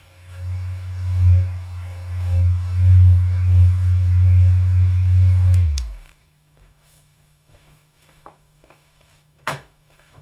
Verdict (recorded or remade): remade